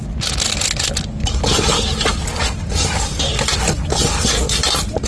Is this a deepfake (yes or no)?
no